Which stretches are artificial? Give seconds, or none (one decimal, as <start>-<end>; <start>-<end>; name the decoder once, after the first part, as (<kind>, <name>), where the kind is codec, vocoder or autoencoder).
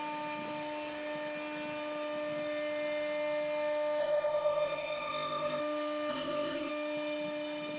4.0-5.6 (codec, ZipCodec); 6.1-6.7